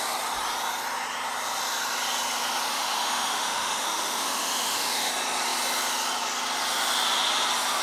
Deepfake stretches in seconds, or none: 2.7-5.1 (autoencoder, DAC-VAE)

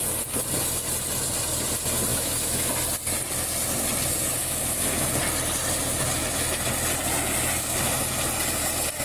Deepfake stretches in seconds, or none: 2.1-2.7 (autoencoder, DAC-VAE); 4.4-5.1